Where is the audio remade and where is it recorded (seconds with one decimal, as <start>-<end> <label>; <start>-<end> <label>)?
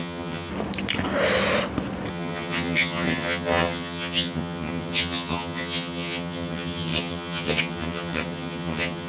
0.0-0.5 remade; 0.5-2.1 recorded; 2.1-9.1 remade